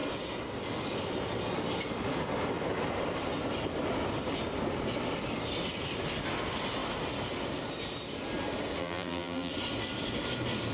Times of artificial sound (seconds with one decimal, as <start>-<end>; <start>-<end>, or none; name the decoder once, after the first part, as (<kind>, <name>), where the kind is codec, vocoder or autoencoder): 8.8-9.5 (vocoder, BigVGAN v2)